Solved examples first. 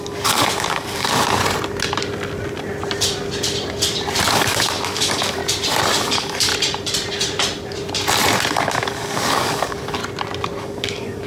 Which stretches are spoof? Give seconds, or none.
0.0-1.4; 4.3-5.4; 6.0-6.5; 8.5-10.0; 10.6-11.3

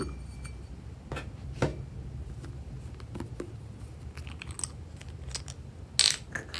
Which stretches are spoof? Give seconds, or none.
none

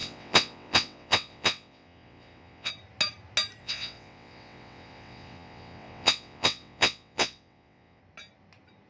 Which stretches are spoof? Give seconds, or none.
0.0-2.7; 3.6-8.0

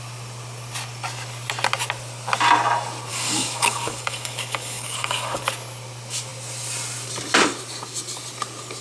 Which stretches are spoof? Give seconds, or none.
3.1-5.4

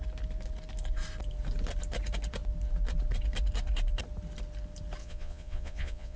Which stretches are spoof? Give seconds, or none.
5.0-6.2